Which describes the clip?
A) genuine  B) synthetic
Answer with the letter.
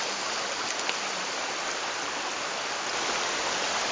A